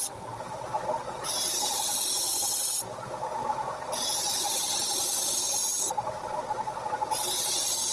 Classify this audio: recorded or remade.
recorded